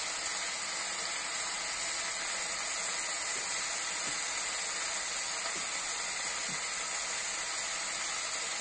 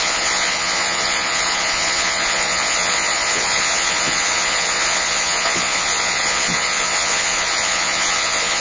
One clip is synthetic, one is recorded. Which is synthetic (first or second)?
second